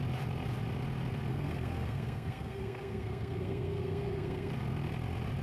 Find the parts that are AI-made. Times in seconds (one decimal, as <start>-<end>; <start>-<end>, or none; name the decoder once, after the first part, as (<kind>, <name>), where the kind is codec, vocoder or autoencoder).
1.3-4.5 (codec, SNAC)